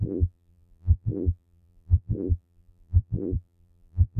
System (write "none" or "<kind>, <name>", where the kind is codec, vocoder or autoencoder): vocoder, BigVGAN v2